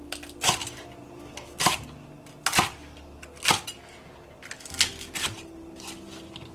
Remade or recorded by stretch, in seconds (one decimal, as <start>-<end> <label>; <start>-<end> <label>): 0.0-6.5 recorded